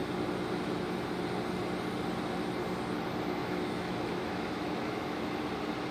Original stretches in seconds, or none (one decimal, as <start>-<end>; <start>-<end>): 0.0-3.4; 5.5-5.9

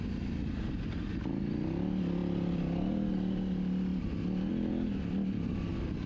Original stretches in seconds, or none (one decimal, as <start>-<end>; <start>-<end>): 0.0-6.1

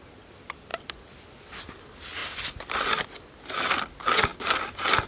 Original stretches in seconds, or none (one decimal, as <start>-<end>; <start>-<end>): 0.0-5.1

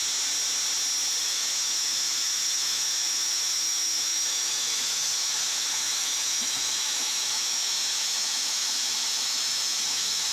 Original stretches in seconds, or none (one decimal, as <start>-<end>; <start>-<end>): 0.0-1.2

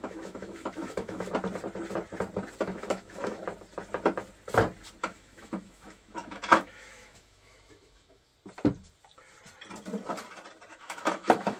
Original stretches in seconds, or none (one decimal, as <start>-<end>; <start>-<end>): 1.3-2.6; 3.4-5.0; 8.3-10.7

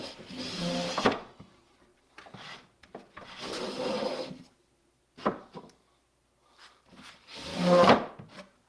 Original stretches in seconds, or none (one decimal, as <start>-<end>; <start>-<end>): 0.0-8.7